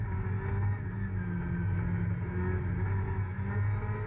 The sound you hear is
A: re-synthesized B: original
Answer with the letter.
B